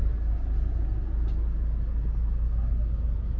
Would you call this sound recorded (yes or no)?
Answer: yes